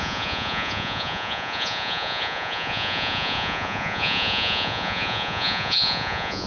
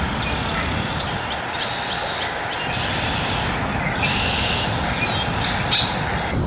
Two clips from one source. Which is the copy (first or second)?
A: first